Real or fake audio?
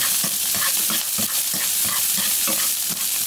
real